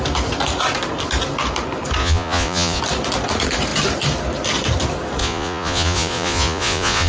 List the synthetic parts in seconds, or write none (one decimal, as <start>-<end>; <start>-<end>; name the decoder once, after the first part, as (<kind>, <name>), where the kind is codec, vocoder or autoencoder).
2.0-2.8 (vocoder, Vocos); 5.2-7.1